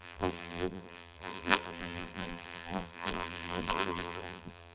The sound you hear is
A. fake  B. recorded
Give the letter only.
A